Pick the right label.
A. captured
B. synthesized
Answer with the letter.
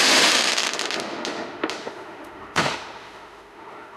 B